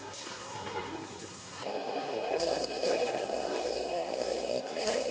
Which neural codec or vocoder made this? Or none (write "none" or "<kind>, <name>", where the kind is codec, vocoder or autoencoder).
codec, SNAC